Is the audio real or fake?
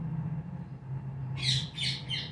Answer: real